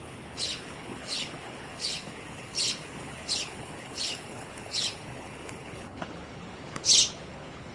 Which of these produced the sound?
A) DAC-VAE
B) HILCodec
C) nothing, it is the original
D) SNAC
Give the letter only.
B